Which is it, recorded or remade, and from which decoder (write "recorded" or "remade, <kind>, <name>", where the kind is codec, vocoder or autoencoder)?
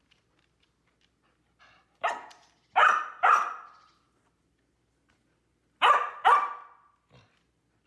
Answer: recorded